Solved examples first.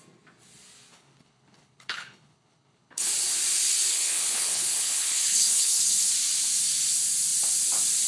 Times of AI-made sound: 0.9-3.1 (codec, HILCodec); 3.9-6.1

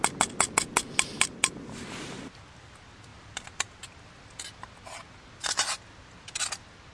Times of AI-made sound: none